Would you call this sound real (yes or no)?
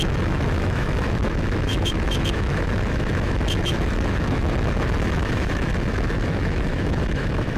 no